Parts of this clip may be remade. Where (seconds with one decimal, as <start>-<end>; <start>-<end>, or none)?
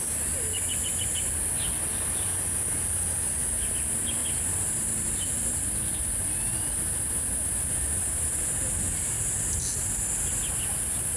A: none